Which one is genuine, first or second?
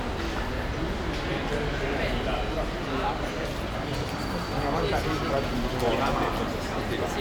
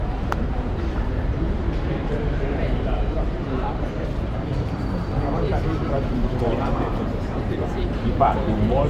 first